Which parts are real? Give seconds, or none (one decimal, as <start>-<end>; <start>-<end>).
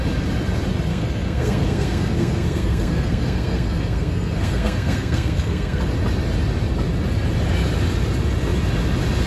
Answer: 0.0-0.9; 5.8-9.3